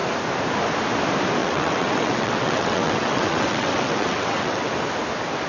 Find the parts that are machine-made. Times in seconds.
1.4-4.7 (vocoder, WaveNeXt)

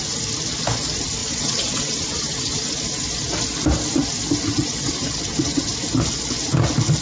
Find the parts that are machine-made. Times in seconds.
1.2-2.7 (vocoder, WaveNeXt); 4.5-5.7

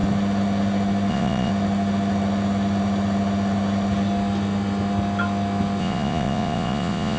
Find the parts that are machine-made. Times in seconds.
1.1-1.5 (vocoder, Vocos); 5.8-7.2